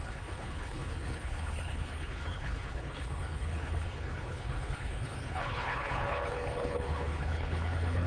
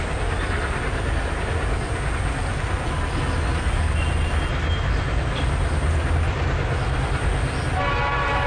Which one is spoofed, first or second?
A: first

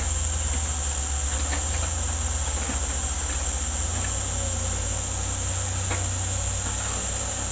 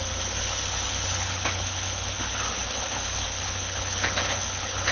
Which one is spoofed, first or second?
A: second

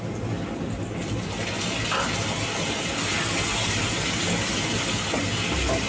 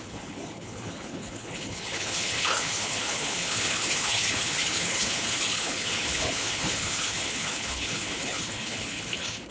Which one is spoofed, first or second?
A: second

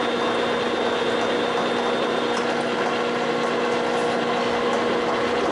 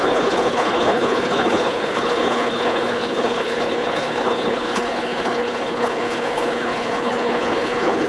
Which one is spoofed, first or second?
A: second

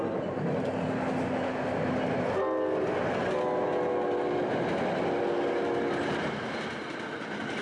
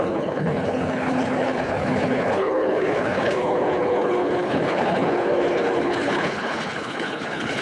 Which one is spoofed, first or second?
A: second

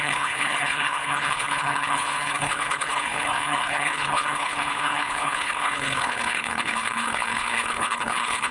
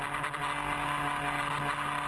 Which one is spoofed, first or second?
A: first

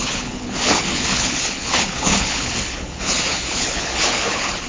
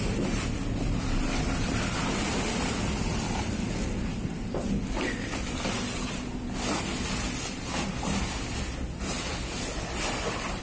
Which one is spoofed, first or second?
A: first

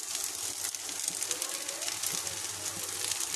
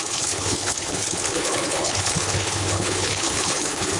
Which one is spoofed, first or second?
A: second